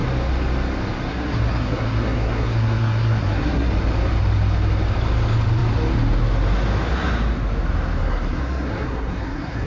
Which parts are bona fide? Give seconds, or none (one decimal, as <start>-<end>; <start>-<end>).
0.0-1.1; 3.7-8.0